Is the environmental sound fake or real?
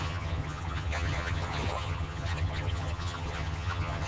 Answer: fake